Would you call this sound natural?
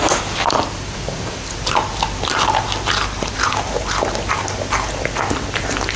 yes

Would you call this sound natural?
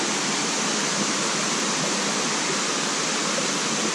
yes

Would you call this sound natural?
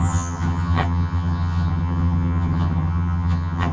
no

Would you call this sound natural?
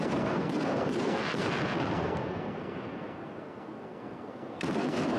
no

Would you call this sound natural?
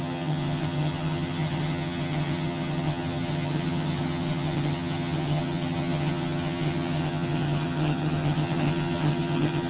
no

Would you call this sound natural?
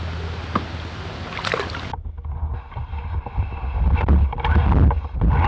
yes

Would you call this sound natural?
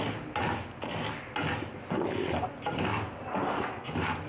yes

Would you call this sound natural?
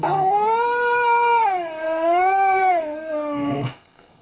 no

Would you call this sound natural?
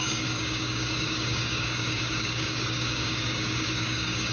no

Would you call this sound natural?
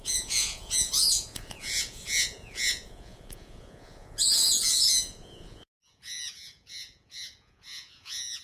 no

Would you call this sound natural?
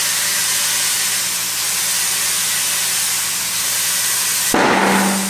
yes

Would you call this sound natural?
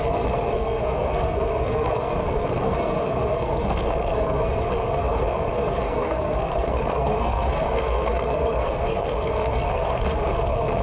no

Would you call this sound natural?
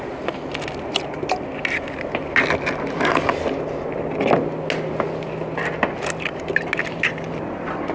yes